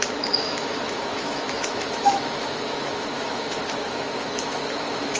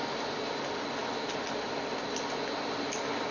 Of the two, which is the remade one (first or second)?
first